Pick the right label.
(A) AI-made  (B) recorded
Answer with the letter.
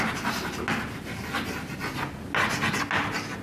B